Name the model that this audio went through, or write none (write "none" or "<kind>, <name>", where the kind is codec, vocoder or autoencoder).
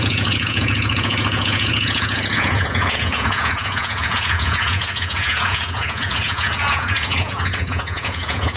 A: vocoder, Vocos